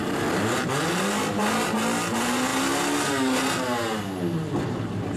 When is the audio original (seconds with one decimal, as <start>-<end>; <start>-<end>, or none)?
0.0-5.2